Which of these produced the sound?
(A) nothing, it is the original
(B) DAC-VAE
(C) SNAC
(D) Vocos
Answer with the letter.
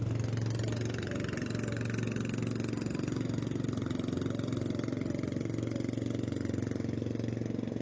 A